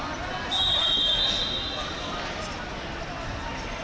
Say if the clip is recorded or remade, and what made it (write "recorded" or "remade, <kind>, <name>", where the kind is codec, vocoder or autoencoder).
recorded